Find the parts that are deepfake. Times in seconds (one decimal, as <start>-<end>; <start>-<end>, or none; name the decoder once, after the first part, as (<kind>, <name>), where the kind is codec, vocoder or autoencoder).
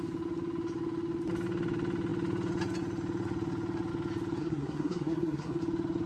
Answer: 4.4-5.6 (codec, SNAC)